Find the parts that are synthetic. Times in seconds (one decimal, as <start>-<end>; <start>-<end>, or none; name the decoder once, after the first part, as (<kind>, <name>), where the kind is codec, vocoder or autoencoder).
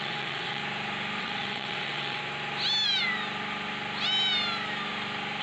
0.0-0.6 (vocoder, WaveNeXt); 1.2-2.2